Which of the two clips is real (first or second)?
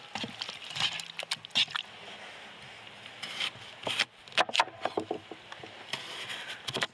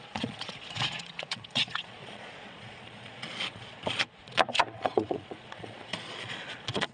first